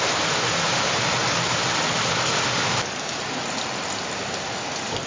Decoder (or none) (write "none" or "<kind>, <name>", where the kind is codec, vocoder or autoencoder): none